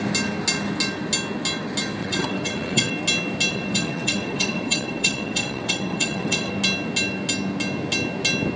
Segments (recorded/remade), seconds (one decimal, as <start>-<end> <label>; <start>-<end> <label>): 0.0-2.0 recorded; 2.0-2.9 remade; 2.9-3.5 recorded; 3.5-6.5 remade; 6.5-8.6 recorded